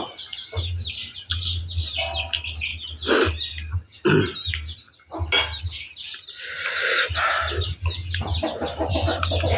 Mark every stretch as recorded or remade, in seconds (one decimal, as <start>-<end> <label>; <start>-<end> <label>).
0.0-9.6 recorded